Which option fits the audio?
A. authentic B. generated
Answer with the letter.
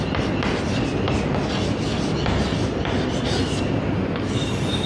A